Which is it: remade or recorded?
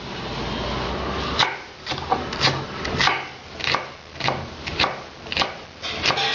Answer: recorded